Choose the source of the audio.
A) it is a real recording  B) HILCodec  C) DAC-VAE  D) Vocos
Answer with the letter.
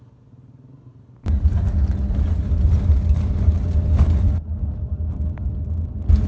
A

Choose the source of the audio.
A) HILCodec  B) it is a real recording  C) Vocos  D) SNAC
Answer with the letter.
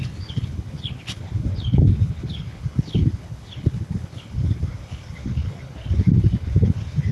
A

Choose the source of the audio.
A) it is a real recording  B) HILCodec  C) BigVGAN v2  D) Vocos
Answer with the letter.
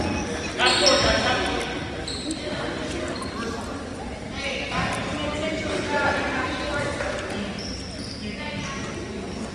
A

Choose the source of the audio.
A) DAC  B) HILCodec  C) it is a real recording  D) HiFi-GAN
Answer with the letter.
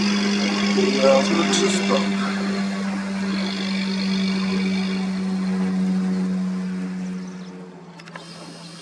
C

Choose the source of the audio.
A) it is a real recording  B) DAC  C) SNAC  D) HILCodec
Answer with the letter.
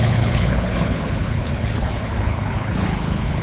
D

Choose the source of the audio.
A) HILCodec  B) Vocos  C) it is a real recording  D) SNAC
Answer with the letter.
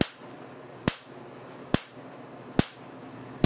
C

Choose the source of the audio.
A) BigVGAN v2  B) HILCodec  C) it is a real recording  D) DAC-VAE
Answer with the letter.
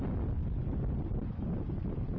C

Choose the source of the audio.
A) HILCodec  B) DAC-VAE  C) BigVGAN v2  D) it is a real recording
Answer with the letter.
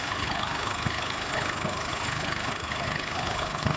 A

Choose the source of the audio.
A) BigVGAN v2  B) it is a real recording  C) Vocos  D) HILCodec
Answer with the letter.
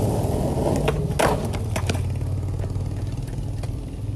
B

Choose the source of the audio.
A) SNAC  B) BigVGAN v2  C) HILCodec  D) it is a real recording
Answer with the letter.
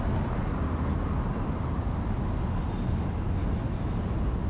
D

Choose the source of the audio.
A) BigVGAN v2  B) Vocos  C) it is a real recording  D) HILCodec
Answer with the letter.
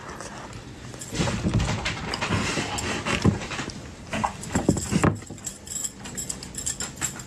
C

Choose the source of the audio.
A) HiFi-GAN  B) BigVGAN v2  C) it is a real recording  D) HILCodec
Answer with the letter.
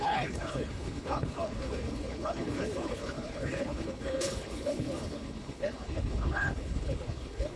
D